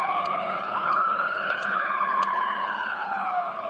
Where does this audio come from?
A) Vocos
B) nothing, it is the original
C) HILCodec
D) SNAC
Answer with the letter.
C